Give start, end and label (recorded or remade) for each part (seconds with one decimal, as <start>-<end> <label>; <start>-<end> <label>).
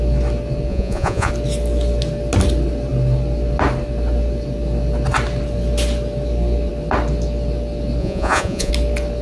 0.0-0.7 recorded; 0.7-1.3 remade; 1.3-8.0 recorded; 8.0-8.7 remade; 8.7-9.2 recorded